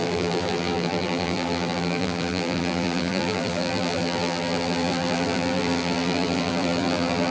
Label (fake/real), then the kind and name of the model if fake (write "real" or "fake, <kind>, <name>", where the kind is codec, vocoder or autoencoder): fake, vocoder, BigVGAN v2